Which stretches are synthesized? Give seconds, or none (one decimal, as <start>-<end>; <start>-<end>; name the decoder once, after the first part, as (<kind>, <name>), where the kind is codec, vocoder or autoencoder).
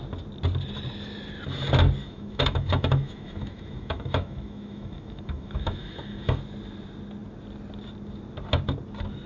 2.0-6.4 (autoencoder, DAC-VAE)